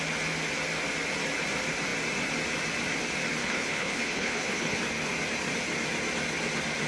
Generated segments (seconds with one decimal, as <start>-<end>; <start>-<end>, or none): 3.4-4.8